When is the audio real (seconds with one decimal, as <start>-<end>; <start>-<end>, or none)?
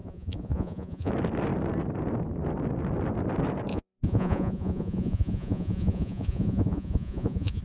1.1-3.7